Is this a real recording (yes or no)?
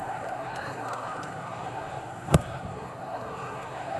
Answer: no